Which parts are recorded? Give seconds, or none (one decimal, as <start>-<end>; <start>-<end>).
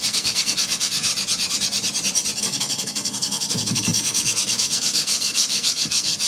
1.1-2.4